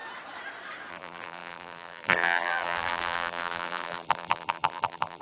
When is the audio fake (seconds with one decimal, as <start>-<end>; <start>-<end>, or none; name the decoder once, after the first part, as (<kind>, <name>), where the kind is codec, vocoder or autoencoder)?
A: 0.9-5.2 (vocoder, BigVGAN v2)